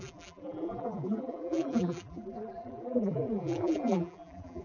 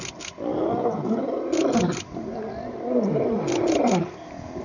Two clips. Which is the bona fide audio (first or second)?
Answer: second